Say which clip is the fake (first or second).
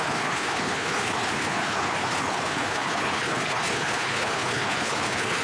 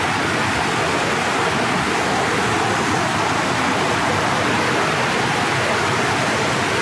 first